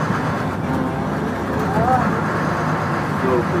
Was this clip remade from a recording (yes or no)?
no